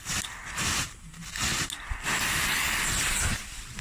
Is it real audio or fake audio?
real